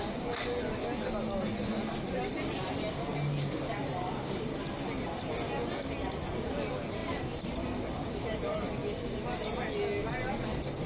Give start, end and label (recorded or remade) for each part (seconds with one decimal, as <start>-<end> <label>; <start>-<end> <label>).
0.0-10.9 recorded

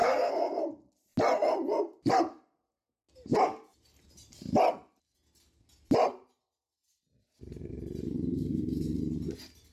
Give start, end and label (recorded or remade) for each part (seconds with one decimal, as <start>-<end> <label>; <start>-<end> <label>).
0.0-0.6 remade; 0.6-8.3 recorded; 8.3-9.0 remade; 9.0-9.7 recorded